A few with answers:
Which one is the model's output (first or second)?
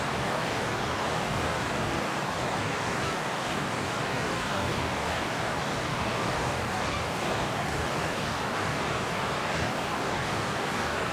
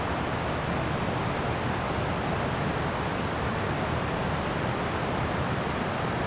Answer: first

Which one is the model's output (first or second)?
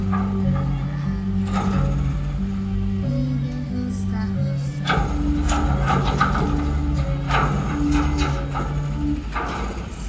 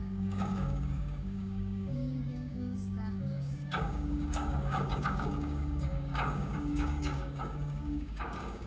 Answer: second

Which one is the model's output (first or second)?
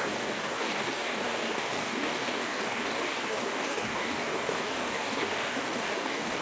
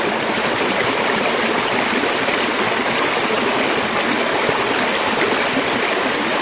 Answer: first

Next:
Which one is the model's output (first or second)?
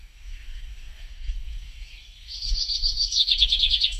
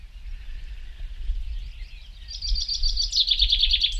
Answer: first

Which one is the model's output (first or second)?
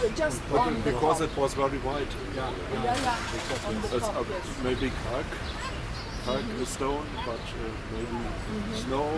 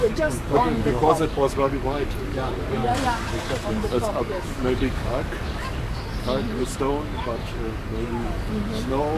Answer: second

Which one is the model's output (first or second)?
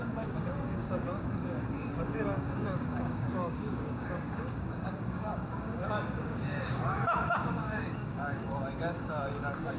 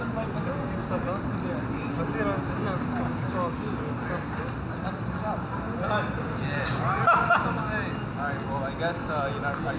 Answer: first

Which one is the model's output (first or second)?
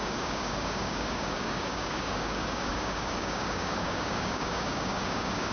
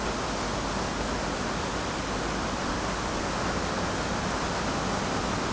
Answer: first